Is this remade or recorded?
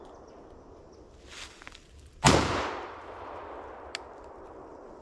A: recorded